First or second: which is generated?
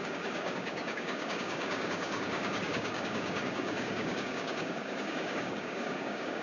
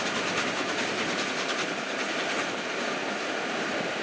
first